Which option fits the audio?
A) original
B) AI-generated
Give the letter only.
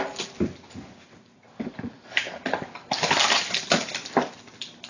A